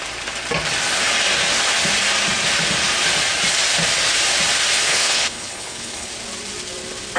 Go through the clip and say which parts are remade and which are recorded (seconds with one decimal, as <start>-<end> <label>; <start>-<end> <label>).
0.0-4.9 recorded; 4.9-6.1 remade; 6.1-7.2 recorded